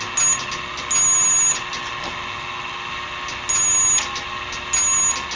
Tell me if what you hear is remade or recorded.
recorded